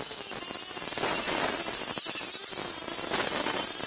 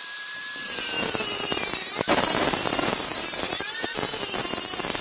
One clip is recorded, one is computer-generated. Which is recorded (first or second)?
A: first